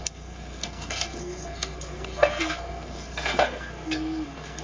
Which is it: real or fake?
fake